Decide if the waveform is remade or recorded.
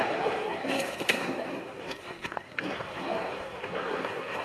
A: remade